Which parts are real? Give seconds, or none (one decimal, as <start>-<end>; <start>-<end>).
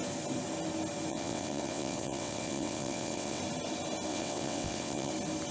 0.0-1.1; 3.4-4.1; 5.1-5.5